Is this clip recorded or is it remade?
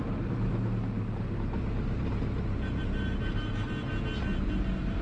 recorded